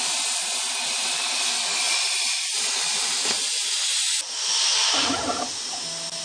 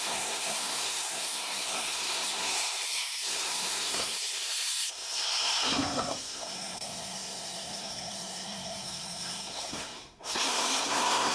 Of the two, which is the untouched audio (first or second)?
first